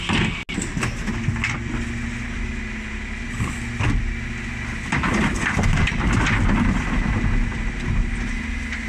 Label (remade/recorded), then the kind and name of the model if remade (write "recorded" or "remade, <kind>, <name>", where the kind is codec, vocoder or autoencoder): recorded